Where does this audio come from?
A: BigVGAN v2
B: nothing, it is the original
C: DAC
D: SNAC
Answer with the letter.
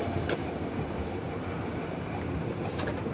B